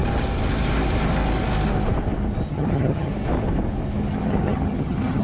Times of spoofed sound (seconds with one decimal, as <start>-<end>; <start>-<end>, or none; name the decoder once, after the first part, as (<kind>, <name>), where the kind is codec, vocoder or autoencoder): 2.5-3.1 (vocoder, HiFi-GAN); 4.1-5.2